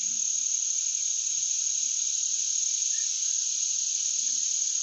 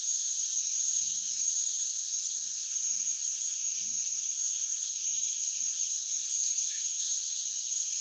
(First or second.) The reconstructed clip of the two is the second